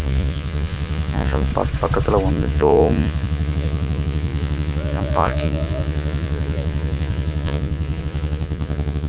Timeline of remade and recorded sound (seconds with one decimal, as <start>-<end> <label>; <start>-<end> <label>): 0.0-1.5 remade; 1.5-2.3 recorded; 2.3-9.1 remade